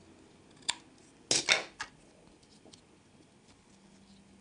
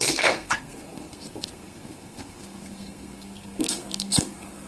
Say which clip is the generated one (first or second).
second